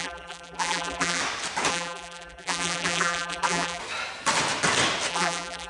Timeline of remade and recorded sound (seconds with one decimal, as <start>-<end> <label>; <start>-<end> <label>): 0.0-1.2 remade; 1.2-1.7 recorded; 1.7-3.8 remade; 3.8-5.1 recorded; 5.1-5.7 remade